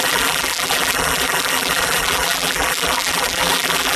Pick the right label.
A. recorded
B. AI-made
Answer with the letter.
B